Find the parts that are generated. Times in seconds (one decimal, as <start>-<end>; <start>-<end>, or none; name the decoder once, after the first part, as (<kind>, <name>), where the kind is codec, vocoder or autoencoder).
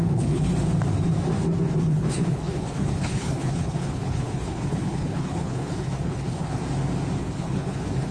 0.0-0.5 (codec, HILCodec); 1.8-6.6; 7.2-8.1